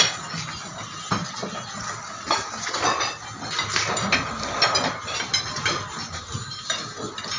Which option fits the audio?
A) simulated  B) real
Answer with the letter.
B